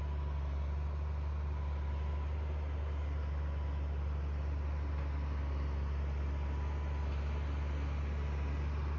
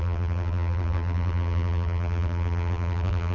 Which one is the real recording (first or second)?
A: first